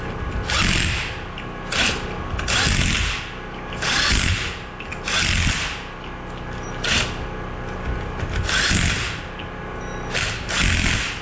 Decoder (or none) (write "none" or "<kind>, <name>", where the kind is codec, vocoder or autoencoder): none